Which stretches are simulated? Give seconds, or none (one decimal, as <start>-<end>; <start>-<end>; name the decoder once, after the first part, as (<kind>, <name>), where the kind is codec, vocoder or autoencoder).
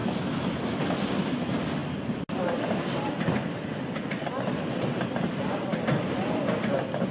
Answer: 0.0-0.6 (autoencoder, DAC-VAE)